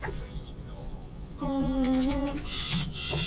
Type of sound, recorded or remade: remade